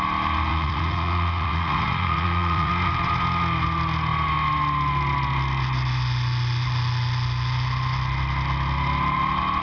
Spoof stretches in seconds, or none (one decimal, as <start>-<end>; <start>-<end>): 0.5-2.7